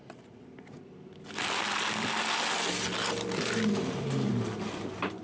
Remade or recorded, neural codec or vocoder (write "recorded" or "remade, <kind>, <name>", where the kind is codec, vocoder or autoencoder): recorded